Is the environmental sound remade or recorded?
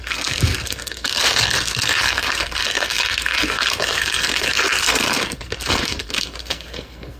remade